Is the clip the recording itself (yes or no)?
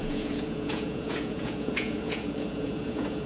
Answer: no